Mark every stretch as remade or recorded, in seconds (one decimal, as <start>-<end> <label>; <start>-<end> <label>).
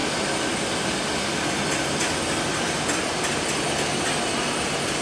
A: 0.0-5.0 recorded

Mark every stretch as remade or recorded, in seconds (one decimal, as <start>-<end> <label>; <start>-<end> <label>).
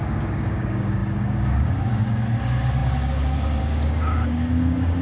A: 0.0-5.0 remade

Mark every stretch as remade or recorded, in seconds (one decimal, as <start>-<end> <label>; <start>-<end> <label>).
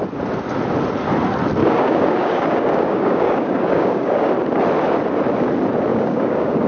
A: 0.0-1.6 recorded; 1.6-4.3 remade; 4.3-5.9 recorded; 5.9-6.7 remade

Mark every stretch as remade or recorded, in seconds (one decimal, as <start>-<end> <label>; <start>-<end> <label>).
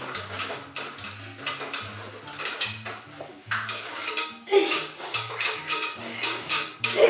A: 0.0-0.6 remade; 0.6-3.3 recorded; 3.3-7.1 remade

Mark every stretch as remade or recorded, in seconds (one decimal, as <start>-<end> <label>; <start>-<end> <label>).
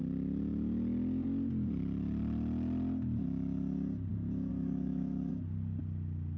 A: 0.0-4.5 recorded; 4.5-5.3 remade; 5.3-6.4 recorded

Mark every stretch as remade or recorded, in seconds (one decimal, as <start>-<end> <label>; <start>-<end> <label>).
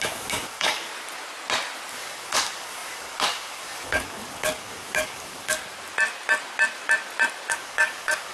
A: 0.0-0.9 remade; 0.9-1.9 recorded; 1.9-5.6 remade; 5.6-7.5 recorded; 7.5-8.3 remade